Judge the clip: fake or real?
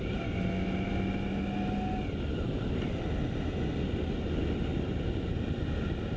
real